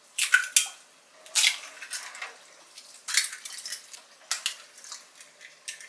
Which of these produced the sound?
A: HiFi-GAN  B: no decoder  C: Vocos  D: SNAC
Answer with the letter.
B